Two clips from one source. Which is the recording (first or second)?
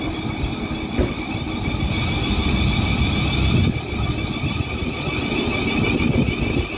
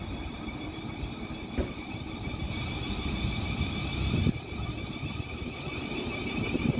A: first